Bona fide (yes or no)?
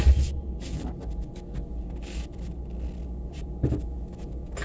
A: yes